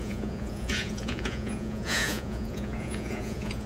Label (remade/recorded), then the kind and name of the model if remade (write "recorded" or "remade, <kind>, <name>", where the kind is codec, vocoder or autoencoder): remade, vocoder, Vocos